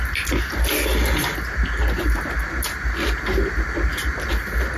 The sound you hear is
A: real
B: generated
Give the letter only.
A